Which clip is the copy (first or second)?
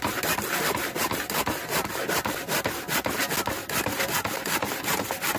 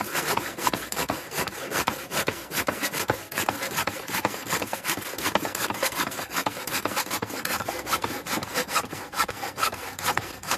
second